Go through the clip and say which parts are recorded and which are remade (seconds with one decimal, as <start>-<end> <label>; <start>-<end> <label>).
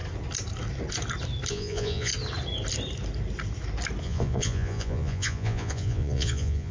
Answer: 0.0-1.5 recorded; 1.5-2.1 remade; 2.1-4.0 recorded; 4.0-6.7 remade